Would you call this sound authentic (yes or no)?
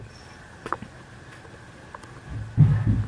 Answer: yes